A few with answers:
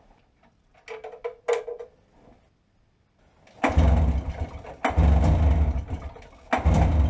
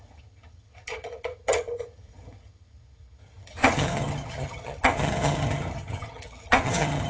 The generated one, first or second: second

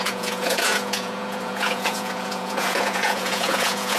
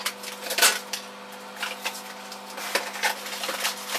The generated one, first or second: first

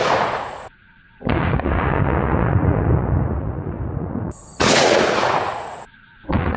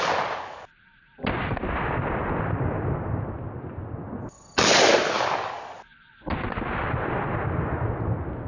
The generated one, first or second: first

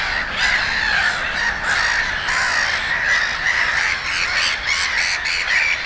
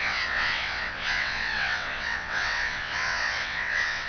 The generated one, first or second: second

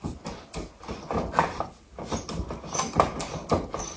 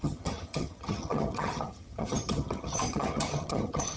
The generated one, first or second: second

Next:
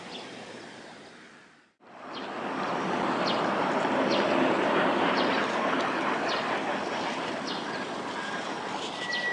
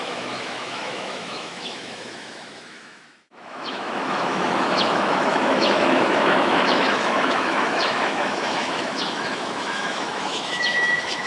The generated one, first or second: second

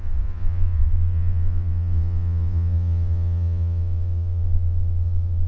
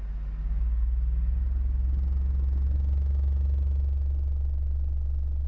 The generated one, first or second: first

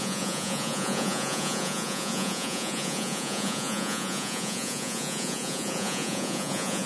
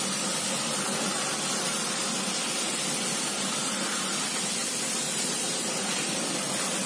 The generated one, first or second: first